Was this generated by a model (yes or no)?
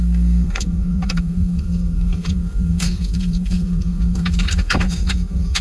yes